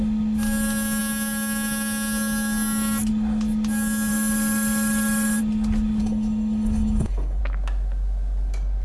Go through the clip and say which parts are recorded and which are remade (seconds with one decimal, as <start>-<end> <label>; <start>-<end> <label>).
0.0-4.1 recorded; 4.1-5.4 remade; 5.4-6.0 recorded; 6.0-7.4 remade; 7.4-8.8 recorded